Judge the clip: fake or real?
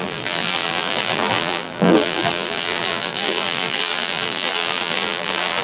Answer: fake